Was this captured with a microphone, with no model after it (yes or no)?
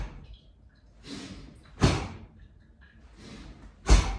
yes